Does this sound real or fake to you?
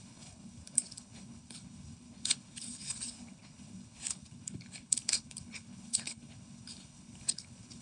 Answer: fake